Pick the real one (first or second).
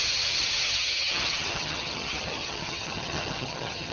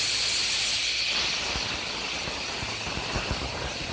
second